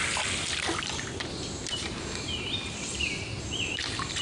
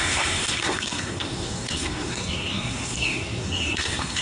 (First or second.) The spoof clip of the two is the second